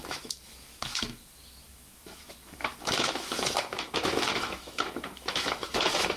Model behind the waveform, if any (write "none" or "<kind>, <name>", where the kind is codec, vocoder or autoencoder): autoencoder, DAC-VAE